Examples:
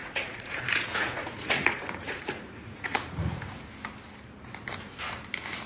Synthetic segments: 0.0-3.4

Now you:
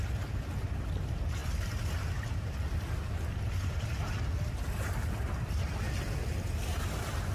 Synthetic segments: none

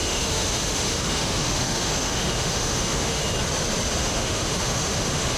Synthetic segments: 0.0-3.2; 4.0-5.4

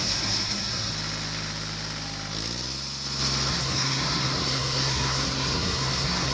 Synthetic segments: 0.0-0.9; 3.5-6.3

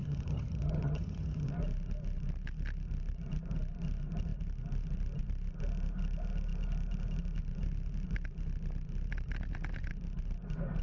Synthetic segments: 0.0-1.5

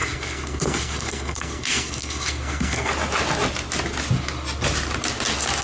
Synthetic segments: 0.0-2.9